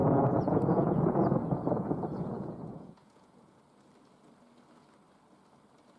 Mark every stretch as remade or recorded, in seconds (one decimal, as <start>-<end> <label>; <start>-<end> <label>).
0.0-3.6 remade; 3.6-6.0 recorded